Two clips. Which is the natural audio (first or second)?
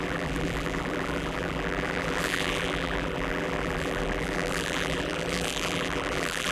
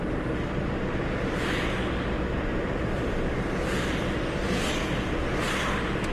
second